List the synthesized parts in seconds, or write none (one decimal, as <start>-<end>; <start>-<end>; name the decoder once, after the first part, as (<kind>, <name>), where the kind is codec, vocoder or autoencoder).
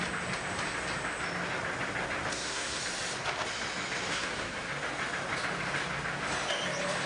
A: 2.3-2.8 (codec, SNAC); 4.1-4.7